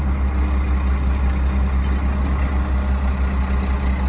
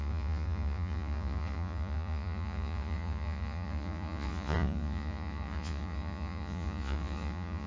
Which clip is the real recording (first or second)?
first